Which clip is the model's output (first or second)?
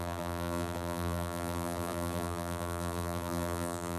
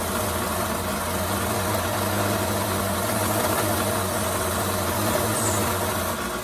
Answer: first